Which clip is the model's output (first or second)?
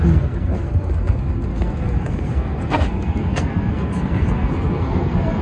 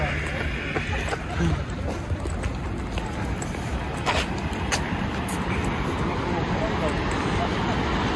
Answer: first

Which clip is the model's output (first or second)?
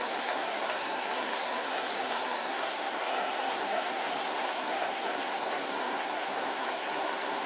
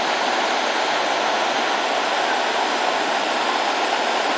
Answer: first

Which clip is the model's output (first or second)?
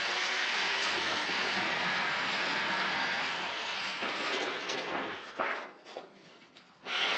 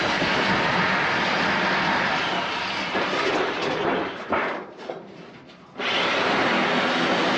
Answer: first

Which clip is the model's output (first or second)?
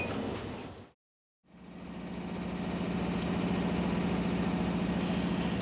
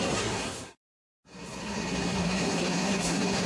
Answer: second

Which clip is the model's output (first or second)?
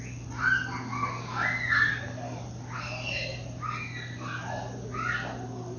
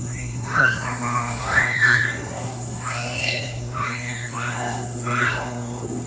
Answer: second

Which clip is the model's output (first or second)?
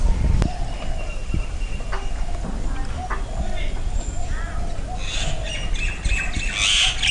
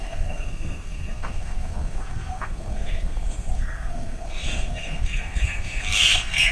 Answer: second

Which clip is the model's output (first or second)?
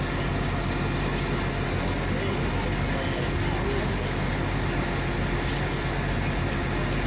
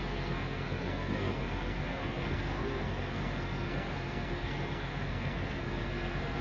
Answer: second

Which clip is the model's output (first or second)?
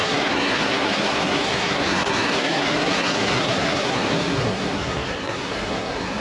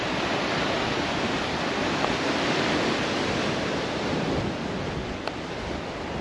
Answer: first